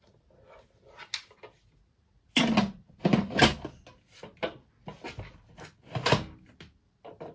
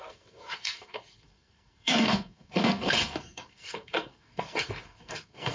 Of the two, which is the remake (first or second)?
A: second